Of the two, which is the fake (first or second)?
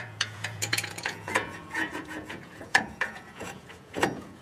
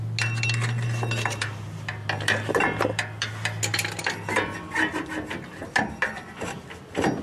first